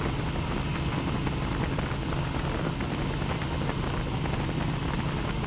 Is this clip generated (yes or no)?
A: no